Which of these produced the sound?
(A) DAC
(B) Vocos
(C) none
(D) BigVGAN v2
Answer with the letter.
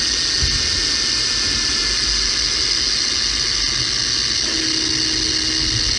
C